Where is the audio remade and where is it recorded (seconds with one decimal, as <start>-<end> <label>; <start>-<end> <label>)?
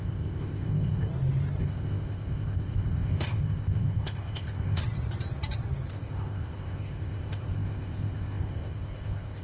0.0-1.1 remade; 1.1-1.6 recorded; 1.6-4.8 remade; 4.8-5.9 recorded; 5.9-9.4 remade